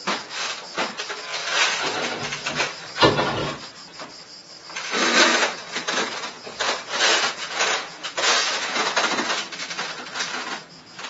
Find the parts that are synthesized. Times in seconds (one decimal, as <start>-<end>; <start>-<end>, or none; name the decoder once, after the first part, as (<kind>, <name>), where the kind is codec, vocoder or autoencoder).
5.3-8.9 (vocoder, Vocos)